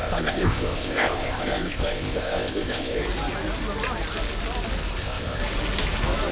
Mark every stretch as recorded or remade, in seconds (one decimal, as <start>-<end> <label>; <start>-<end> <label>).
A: 0.0-3.0 remade; 3.0-5.0 recorded; 5.0-5.4 remade; 5.4-6.3 recorded